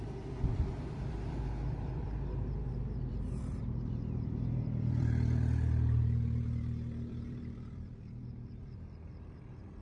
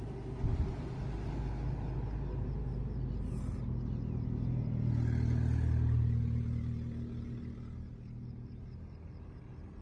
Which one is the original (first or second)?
second